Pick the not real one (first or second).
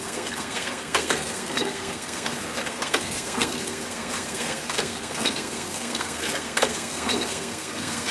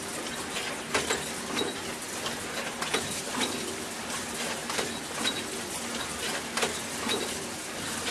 first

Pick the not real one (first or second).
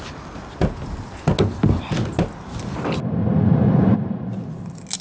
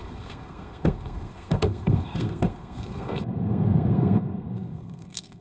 second